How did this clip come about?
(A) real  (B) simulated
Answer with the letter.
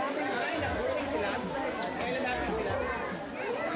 A